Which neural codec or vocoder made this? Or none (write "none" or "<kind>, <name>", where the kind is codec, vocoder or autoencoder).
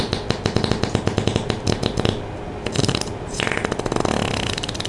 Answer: none